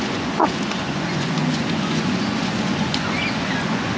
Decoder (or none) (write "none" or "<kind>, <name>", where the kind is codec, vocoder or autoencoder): vocoder, Vocos